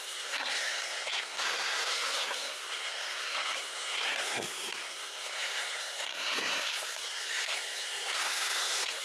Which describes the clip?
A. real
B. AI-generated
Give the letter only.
B